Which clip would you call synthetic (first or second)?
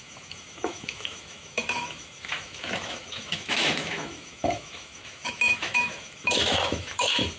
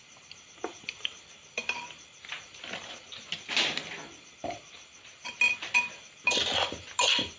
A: first